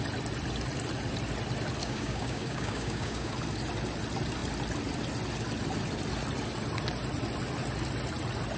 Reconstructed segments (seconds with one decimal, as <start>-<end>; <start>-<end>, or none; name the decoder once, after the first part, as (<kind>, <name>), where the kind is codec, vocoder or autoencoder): 1.8-3.3 (codec, DAC)